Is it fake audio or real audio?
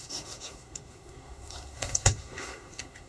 fake